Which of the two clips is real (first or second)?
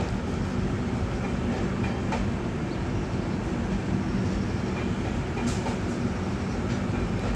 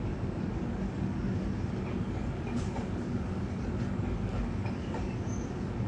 first